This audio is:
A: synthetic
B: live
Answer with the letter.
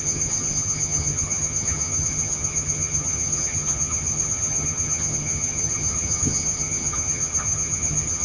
A